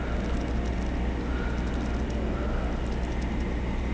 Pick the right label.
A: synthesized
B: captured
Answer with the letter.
B